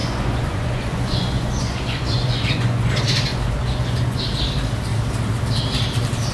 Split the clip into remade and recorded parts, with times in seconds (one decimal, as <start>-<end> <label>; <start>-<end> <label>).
0.0-2.9 remade; 2.9-3.3 recorded; 3.3-4.2 remade; 4.2-6.3 recorded